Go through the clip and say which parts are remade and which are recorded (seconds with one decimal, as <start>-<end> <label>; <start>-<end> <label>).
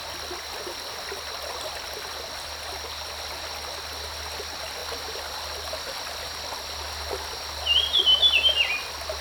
0.0-9.2 recorded